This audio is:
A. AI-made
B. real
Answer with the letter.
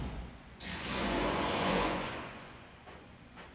A